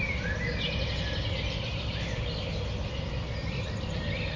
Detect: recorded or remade recorded